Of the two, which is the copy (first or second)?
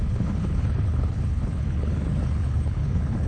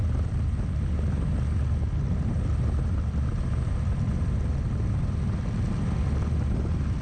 first